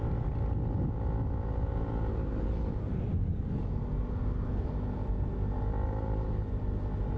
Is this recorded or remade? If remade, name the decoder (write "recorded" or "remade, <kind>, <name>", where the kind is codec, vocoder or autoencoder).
recorded